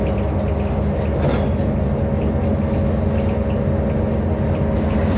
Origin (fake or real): real